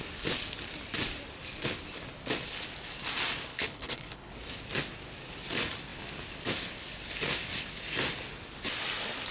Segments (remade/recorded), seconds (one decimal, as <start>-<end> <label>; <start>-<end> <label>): 0.0-3.5 recorded; 3.5-4.3 remade; 4.3-9.3 recorded